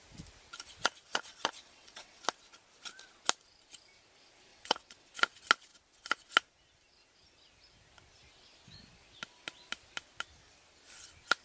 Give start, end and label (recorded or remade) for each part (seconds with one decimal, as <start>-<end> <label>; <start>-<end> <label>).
0.0-1.1 recorded; 1.1-2.2 remade; 2.2-4.5 recorded; 4.5-5.1 remade; 5.1-11.4 recorded